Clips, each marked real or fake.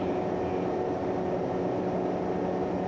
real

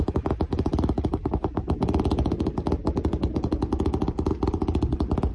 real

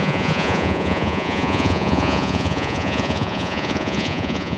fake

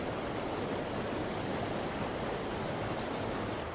real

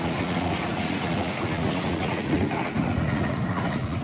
fake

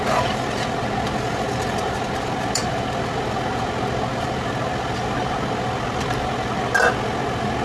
real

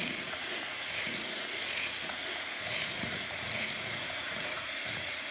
fake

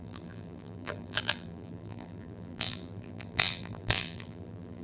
fake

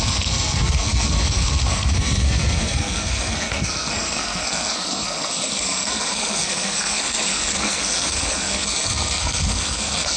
fake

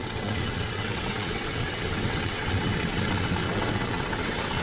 fake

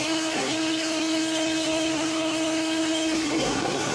fake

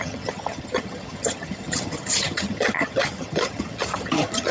fake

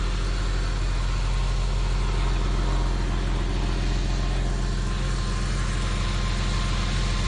real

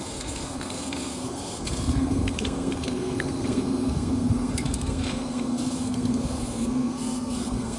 fake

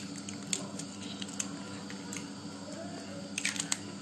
real